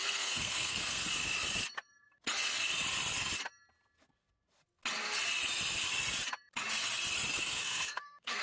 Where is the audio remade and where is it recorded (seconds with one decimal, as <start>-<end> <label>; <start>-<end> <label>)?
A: 0.0-1.1 remade; 1.1-7.4 recorded; 7.4-8.4 remade